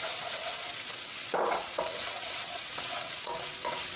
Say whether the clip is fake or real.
fake